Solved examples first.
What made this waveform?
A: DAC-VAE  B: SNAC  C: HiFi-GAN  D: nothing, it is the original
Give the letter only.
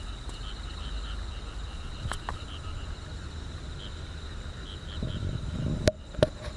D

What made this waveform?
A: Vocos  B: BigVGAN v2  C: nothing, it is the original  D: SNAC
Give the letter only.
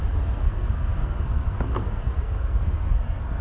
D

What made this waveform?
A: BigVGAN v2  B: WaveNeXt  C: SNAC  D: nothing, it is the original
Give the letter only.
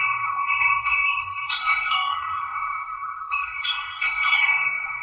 C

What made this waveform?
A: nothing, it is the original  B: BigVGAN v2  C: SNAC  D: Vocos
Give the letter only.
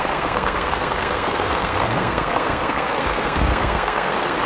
C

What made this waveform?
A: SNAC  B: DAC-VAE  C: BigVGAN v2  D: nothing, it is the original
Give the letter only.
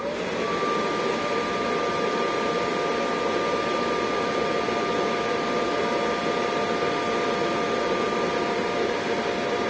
D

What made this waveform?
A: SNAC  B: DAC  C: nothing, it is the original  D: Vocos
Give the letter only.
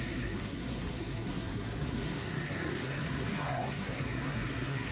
A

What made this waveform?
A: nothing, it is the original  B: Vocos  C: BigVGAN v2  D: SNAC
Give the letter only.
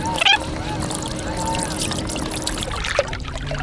A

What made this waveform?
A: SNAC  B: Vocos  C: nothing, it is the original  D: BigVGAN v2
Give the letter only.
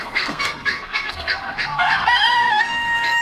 A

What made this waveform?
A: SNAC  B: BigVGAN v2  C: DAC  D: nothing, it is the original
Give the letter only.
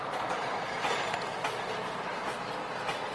D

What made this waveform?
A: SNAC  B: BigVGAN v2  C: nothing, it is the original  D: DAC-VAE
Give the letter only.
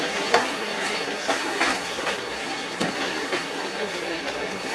A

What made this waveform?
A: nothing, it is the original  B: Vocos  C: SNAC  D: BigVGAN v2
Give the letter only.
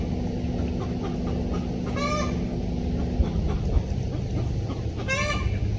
A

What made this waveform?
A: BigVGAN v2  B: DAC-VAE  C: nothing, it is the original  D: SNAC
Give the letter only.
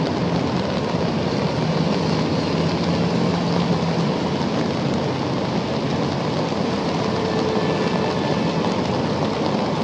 C